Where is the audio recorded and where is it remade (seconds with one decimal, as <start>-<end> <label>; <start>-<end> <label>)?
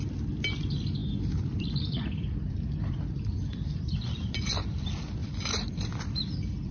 0.0-1.0 recorded; 1.0-4.7 remade; 4.7-5.2 recorded; 5.2-6.2 remade; 6.2-6.7 recorded